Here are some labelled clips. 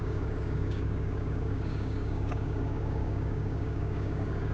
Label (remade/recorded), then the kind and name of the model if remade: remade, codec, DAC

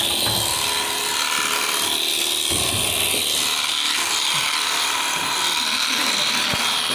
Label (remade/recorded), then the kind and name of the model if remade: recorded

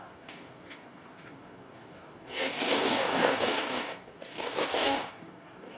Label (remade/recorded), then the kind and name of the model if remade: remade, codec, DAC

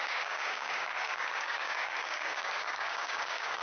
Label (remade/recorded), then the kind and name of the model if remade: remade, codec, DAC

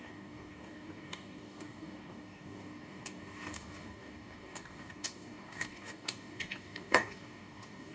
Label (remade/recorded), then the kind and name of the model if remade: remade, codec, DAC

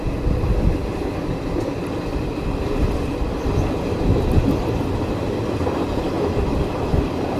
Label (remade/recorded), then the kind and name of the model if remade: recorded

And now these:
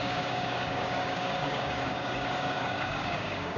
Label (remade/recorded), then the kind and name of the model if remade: remade, codec, DAC